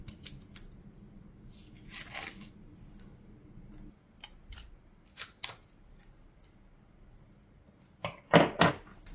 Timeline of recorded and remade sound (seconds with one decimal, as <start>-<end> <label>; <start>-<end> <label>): 0.0-9.1 recorded

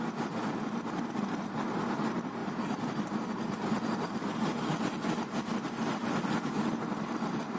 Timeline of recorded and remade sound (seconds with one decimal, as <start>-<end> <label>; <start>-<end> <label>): 0.0-2.4 recorded; 2.4-2.9 remade; 2.9-7.6 recorded

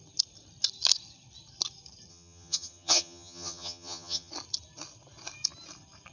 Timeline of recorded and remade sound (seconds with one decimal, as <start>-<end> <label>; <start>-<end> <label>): 0.0-2.1 recorded; 2.1-4.3 remade; 4.3-6.1 recorded

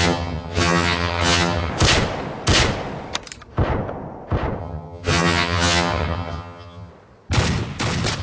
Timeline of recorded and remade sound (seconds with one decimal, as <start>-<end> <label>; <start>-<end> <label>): 0.0-1.7 remade; 1.7-4.6 recorded; 4.6-6.9 remade; 6.9-8.2 recorded